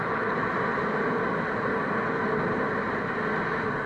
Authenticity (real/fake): real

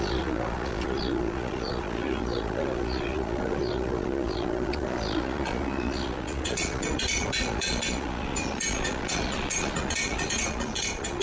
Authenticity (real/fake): fake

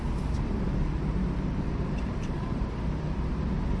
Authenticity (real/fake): real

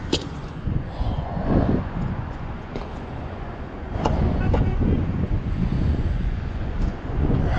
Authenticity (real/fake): fake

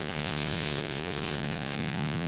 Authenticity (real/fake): fake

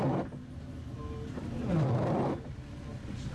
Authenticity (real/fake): real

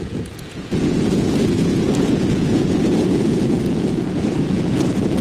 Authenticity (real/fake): fake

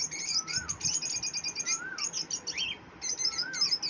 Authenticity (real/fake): real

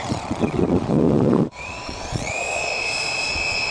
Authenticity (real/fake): fake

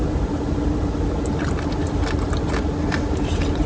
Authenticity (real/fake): real